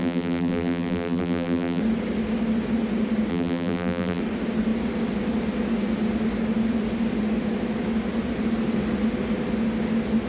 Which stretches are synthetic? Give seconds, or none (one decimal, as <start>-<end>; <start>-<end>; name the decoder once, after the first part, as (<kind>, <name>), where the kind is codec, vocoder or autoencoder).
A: 0.0-1.8 (vocoder, BigVGAN v2); 3.3-4.2